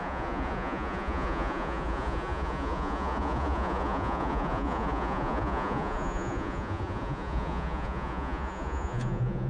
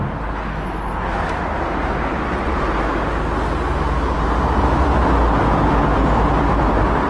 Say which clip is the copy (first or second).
first